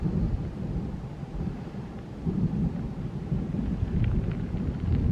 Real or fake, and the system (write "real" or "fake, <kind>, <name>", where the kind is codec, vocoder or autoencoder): real